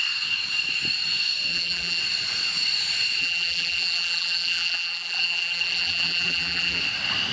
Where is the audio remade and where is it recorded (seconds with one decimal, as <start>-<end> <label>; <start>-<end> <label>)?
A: 0.0-1.5 recorded; 1.5-2.0 remade; 2.0-3.2 recorded; 3.2-6.8 remade; 6.8-7.3 recorded